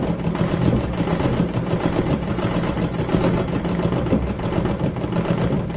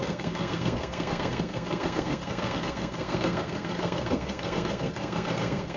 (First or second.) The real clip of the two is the first